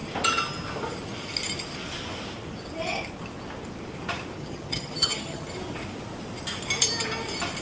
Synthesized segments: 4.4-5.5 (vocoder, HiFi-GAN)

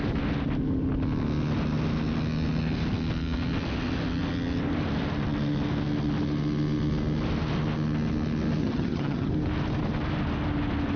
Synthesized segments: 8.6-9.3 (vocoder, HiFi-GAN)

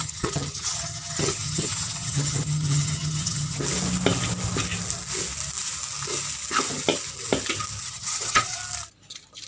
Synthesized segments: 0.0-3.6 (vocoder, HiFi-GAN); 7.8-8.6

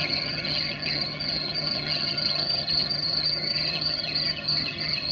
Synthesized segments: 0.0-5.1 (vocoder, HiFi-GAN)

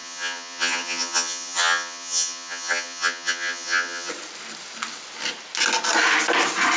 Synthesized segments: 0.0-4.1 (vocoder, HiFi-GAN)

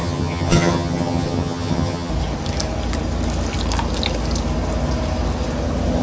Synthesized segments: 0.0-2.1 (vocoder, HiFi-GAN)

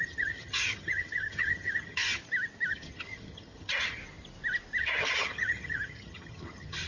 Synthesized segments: 0.0-2.2 (vocoder, HiFi-GAN); 2.7-4.0; 4.8-6.9

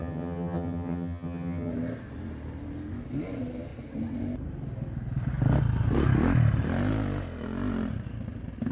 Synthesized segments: 0.0-1.7 (vocoder, HiFi-GAN)